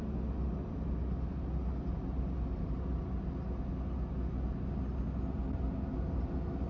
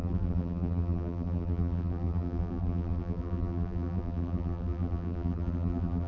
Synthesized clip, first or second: second